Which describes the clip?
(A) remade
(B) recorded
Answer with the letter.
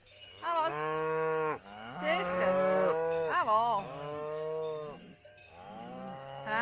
A